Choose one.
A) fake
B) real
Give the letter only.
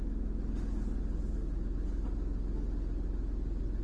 B